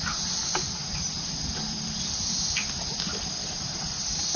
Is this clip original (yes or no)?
yes